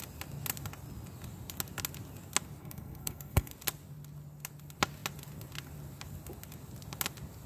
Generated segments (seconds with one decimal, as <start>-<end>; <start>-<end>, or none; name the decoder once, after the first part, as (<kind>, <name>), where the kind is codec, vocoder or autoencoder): 2.6-3.5 (codec, SNAC)